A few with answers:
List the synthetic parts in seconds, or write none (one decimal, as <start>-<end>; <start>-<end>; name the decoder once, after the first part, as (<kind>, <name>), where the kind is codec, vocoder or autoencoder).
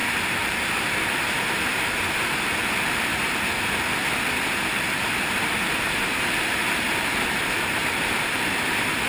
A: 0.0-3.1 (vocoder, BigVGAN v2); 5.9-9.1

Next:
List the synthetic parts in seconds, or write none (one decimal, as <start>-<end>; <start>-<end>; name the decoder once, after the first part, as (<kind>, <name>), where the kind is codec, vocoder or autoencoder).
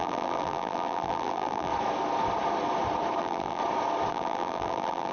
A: 0.0-1.7 (vocoder, BigVGAN v2); 3.2-3.6; 4.1-5.1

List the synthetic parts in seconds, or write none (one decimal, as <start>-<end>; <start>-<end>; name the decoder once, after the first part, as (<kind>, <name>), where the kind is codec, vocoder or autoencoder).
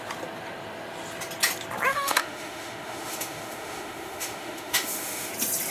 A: 1.9-5.3 (autoencoder, DAC-VAE)